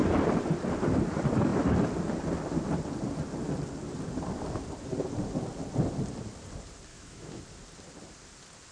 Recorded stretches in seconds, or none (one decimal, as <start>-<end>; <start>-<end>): 0.0-6.9; 7.4-8.7